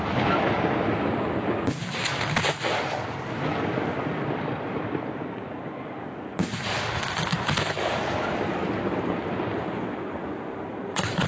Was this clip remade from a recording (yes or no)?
no